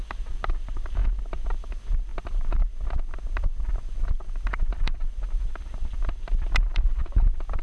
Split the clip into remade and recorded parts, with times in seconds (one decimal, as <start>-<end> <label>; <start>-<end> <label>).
0.0-7.6 recorded